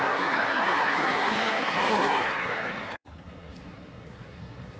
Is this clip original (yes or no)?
no